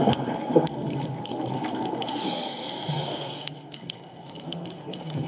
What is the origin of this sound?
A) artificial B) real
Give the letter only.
A